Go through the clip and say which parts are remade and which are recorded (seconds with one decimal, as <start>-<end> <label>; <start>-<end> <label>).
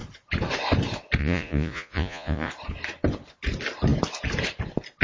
0.0-1.2 recorded; 1.2-2.5 remade; 2.5-5.0 recorded